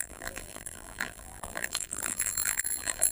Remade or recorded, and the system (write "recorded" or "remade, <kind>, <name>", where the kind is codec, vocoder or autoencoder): remade, vocoder, BigVGAN v2